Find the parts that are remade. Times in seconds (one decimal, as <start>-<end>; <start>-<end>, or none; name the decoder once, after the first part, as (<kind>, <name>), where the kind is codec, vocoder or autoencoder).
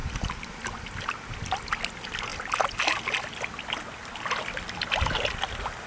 none